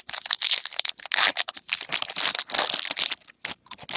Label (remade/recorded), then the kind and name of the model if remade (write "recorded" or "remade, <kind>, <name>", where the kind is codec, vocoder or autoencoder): recorded